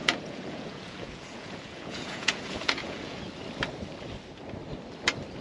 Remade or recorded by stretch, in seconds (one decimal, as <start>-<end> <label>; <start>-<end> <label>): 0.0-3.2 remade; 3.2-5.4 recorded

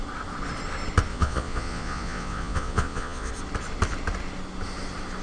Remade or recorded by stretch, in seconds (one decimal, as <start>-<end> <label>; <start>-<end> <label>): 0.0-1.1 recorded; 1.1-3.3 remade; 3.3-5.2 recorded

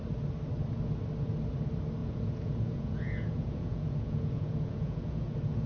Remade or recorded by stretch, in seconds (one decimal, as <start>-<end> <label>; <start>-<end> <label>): 0.0-2.0 recorded; 2.0-5.7 remade